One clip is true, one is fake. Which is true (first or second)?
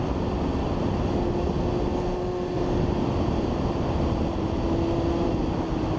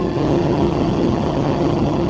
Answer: first